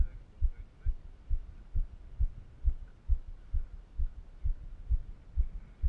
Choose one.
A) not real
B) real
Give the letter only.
B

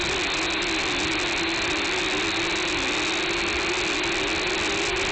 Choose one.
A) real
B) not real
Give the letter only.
A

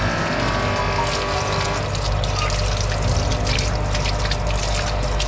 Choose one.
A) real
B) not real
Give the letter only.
A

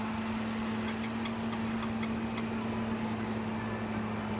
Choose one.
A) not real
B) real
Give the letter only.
B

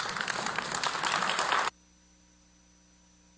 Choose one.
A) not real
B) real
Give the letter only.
B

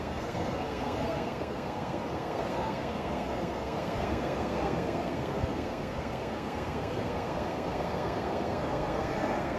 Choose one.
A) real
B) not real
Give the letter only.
B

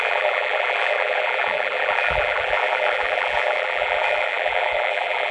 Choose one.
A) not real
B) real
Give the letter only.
A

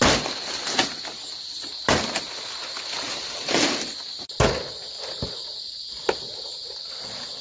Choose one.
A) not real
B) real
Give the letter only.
B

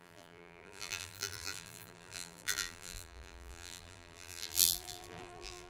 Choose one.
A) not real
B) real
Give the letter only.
A